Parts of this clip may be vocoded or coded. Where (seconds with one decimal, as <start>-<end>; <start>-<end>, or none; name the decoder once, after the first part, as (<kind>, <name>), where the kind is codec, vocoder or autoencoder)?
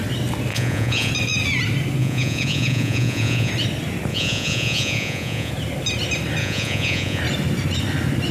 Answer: 0.5-1.1 (vocoder, Vocos); 2.0-3.5; 4.1-5.5; 6.4-7.2